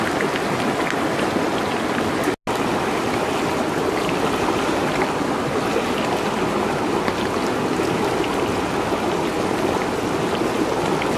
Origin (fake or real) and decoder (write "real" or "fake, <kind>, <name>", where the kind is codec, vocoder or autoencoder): real